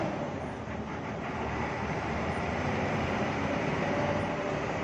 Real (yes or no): no